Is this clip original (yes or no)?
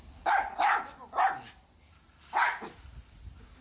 yes